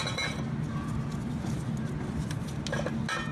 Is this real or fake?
real